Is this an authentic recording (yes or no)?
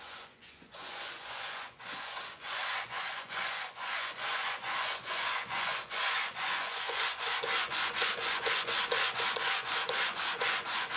no